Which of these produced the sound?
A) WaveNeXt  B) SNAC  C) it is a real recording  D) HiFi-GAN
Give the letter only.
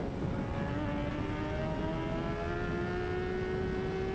C